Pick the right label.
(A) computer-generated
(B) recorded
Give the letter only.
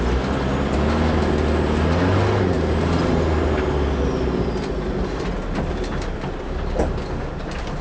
B